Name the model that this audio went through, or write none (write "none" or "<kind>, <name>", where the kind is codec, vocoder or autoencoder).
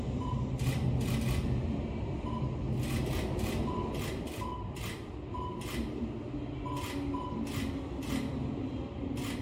none